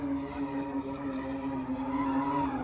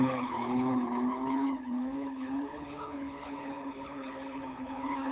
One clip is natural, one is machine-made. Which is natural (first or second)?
first